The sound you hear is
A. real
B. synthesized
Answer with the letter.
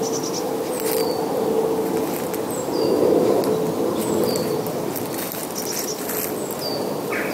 A